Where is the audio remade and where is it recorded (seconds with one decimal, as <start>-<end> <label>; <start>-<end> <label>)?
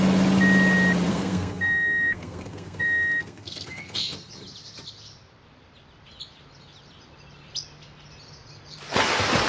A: 0.0-1.1 recorded; 1.1-4.0 remade; 4.0-9.5 recorded